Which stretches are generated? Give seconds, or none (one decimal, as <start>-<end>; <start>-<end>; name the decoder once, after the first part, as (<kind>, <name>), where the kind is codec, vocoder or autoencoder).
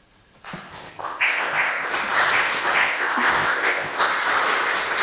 0.7-1.9 (codec, ZipCodec); 2.8-4.1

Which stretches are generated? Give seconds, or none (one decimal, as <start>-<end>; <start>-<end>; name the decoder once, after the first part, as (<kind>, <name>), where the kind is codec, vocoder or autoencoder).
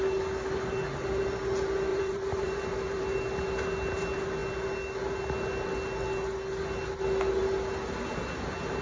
1.9-3.0 (vocoder, BigVGAN v2)